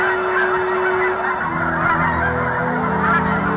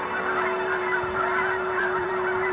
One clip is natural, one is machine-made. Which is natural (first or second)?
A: first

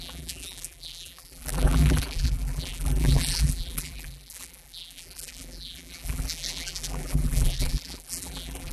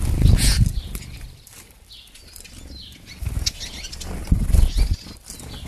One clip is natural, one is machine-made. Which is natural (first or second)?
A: second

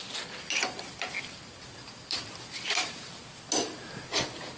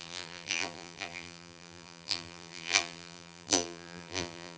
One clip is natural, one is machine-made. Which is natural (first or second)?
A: first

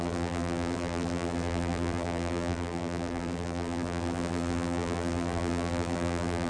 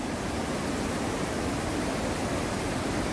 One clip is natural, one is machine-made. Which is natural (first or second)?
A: second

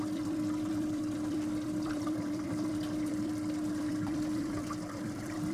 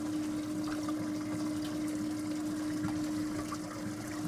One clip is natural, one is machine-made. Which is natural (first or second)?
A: second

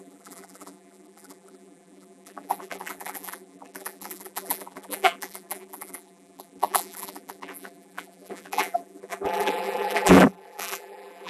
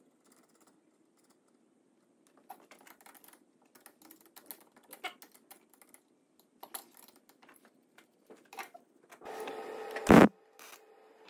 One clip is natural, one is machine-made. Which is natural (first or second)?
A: second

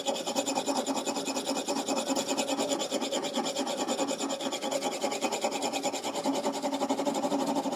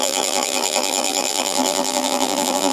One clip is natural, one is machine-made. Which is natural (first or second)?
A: first